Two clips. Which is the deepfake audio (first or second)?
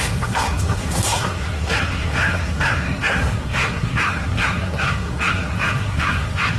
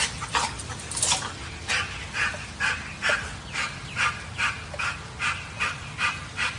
first